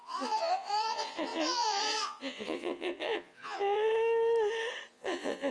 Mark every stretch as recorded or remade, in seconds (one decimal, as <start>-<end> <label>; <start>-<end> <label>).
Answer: 0.0-3.9 remade; 3.9-4.9 recorded; 4.9-5.5 remade